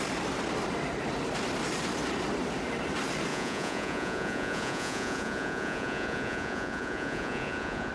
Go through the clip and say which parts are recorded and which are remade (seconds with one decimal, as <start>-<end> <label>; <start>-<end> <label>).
0.0-3.3 recorded; 3.3-7.9 remade